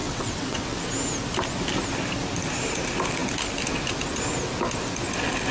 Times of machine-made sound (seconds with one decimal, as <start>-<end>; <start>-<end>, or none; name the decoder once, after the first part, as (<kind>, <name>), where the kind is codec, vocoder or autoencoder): 0.0-0.8 (vocoder, WaveNeXt)